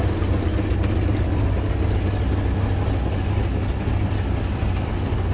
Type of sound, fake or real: real